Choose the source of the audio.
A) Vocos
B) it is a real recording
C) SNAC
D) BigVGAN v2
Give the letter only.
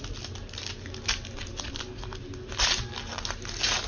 B